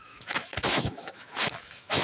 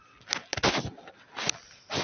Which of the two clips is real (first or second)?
second